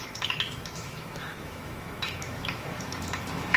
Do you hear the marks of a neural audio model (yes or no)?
yes